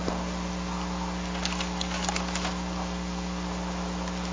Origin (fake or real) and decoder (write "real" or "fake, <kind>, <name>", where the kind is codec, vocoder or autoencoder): real